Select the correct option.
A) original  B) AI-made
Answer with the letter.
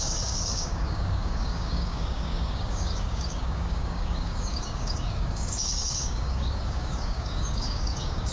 B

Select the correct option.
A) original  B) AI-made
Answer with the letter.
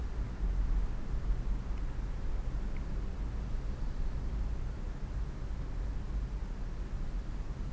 A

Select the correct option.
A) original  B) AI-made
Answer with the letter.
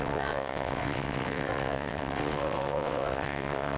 B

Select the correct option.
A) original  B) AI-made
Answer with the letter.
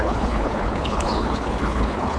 B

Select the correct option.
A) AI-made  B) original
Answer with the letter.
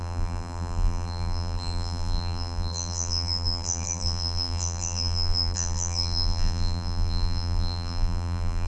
A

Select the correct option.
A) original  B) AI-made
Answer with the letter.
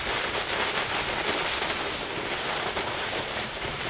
A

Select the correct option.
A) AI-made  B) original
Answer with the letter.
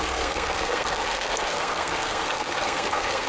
A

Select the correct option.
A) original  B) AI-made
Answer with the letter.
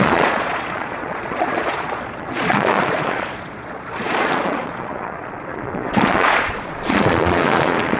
B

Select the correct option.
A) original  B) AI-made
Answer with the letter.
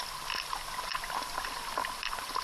A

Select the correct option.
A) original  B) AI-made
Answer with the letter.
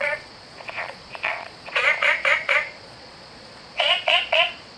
B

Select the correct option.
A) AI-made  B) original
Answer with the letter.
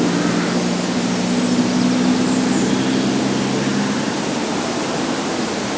B